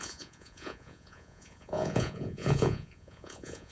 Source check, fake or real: fake